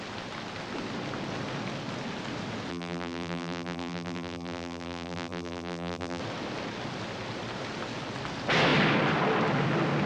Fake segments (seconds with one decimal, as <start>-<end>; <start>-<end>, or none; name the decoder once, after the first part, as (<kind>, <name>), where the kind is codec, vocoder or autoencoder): 2.7-6.2 (vocoder, BigVGAN v2)